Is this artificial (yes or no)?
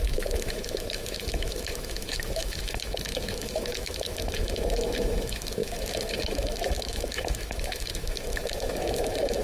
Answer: yes